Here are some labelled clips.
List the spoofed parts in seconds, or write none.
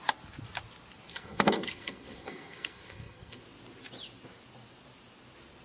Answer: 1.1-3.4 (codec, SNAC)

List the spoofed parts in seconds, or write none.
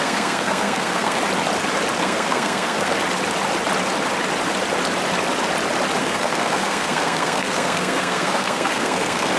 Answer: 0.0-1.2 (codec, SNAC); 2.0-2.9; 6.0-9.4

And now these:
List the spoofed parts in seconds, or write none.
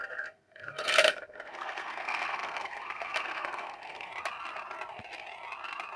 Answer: 0.0-4.1 (codec, SNAC)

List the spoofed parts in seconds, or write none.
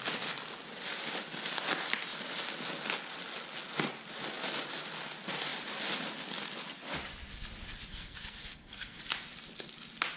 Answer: 7.9-9.0 (codec, SNAC)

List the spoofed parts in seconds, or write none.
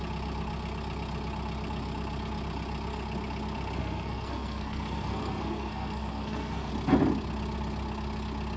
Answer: 3.8-6.7 (codec, SNAC)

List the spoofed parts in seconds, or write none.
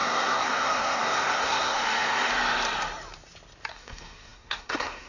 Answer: 0.0-2.3 (codec, SNAC); 3.7-5.1